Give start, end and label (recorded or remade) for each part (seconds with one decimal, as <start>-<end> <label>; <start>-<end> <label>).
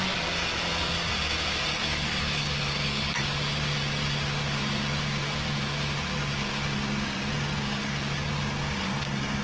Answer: 0.0-1.7 recorded; 1.7-3.2 remade; 3.2-9.4 recorded